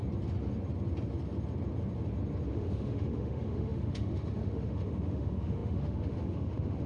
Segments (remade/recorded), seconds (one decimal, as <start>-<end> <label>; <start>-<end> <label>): 0.0-2.5 recorded; 2.5-6.9 remade